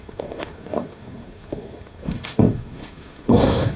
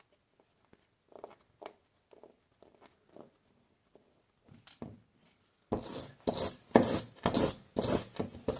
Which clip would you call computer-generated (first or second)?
first